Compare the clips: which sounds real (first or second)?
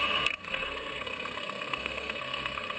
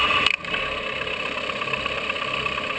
second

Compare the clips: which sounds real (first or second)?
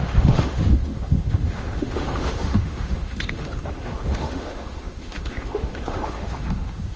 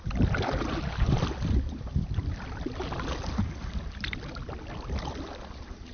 second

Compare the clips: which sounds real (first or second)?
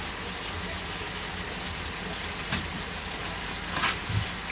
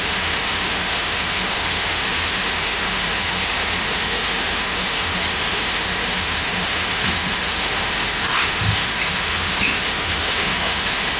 first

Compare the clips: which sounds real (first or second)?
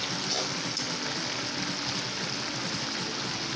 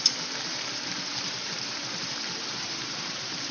first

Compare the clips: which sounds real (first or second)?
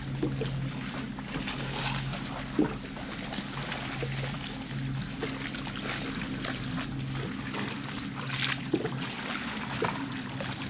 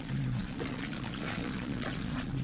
first